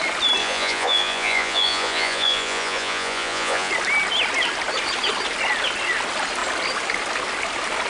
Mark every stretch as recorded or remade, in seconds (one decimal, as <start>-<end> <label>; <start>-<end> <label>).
0.0-0.4 recorded; 0.4-3.7 remade; 3.7-7.9 recorded